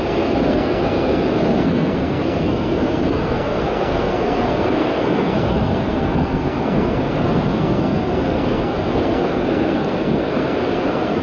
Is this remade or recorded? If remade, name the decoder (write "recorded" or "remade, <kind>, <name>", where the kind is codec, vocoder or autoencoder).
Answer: remade, codec, SNAC